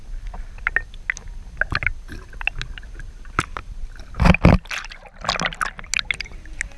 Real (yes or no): yes